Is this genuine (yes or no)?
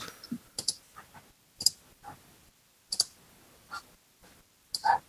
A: yes